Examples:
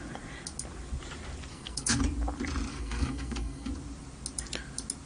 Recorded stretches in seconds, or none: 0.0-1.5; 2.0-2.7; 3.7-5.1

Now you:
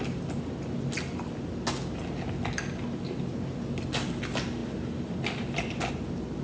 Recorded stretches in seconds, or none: 0.0-6.4

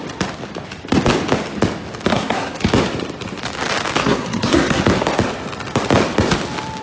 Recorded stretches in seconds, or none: 0.0-2.1; 2.6-4.0; 4.8-6.8

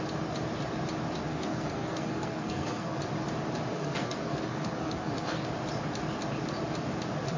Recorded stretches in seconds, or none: 0.0-1.3; 3.0-3.7; 5.5-7.4

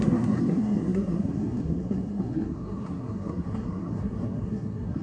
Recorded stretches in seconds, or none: none